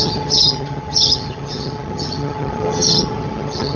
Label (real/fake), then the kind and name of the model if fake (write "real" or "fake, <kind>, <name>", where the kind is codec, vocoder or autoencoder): fake, vocoder, HiFi-GAN